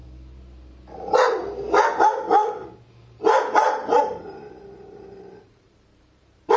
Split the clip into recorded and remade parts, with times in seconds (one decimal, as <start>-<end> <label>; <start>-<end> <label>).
0.0-3.1 recorded; 3.1-6.6 remade